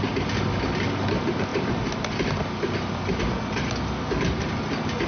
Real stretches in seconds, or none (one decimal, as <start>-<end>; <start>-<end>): 0.0-5.1

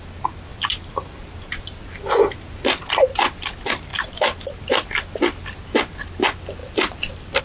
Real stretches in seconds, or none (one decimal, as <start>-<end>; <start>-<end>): 0.0-0.5; 1.8-3.9; 4.5-6.6